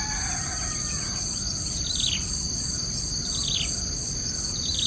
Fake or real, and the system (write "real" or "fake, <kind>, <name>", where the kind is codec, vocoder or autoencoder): real